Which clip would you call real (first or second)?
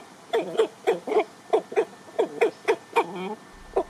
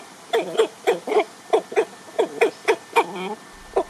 first